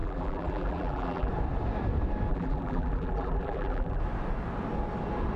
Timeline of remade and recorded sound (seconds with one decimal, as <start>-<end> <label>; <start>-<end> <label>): 0.0-1.3 remade; 1.3-2.3 recorded; 2.3-4.0 remade; 4.0-5.4 recorded